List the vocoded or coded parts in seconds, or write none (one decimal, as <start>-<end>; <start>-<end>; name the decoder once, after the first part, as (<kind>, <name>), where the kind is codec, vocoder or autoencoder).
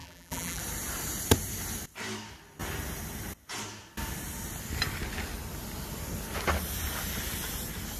0.0-0.6 (vocoder, BigVGAN v2)